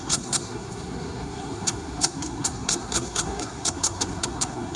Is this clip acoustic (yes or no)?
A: no